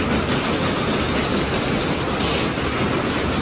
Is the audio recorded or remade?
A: recorded